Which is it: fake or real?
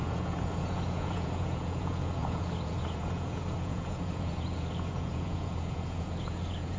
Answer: fake